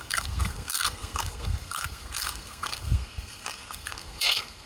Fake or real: fake